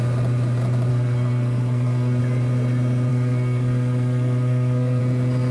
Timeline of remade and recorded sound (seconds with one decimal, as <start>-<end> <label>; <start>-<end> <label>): 0.0-0.9 recorded; 0.9-2.2 remade; 2.2-3.1 recorded; 3.1-5.0 remade; 5.0-5.5 recorded